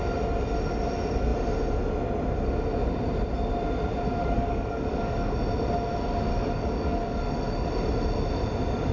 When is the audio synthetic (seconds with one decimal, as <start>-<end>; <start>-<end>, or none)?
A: 4.2-5.4; 6.3-7.7